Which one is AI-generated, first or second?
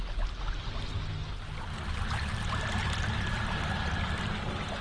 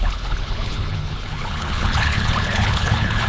second